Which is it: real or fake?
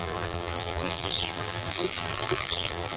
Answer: fake